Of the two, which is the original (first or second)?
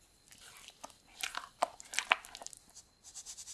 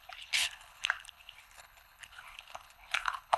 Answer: first